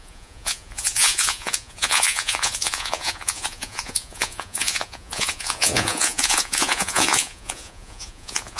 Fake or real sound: fake